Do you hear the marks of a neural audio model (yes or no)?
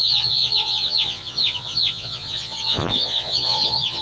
yes